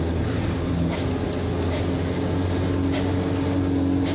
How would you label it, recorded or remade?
recorded